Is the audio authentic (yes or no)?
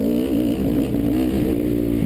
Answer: yes